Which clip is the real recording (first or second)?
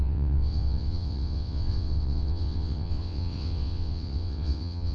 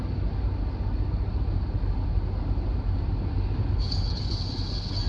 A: second